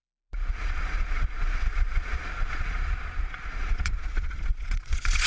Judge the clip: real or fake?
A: fake